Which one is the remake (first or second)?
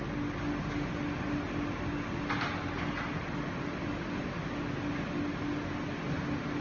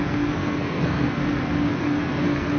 second